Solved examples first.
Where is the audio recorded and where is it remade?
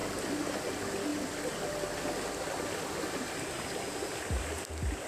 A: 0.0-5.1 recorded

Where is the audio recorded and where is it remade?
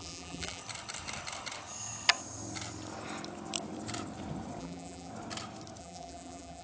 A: 0.0-0.6 remade; 0.6-4.6 recorded; 4.6-5.1 remade; 5.1-5.8 recorded; 5.8-6.6 remade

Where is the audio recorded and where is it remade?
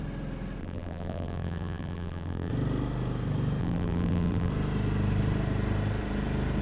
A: 0.0-0.6 recorded; 0.6-2.5 remade; 2.5-3.6 recorded; 3.6-4.5 remade; 4.5-6.6 recorded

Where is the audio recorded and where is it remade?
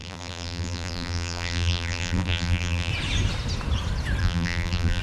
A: 0.0-2.9 remade; 2.9-4.2 recorded; 4.2-5.0 remade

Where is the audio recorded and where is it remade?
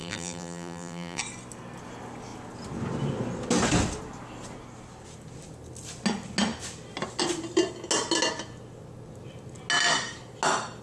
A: 0.0-1.2 remade; 1.2-10.8 recorded